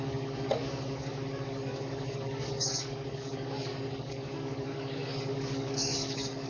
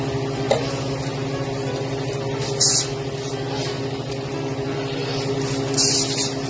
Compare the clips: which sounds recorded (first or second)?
second